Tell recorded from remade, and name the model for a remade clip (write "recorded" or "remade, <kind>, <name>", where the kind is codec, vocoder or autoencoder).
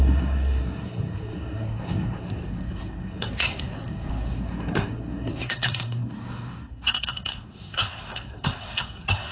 remade, codec, SNAC